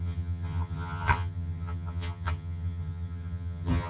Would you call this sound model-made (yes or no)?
yes